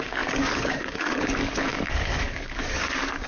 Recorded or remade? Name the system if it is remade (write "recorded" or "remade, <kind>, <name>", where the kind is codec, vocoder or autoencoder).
remade, codec, DAC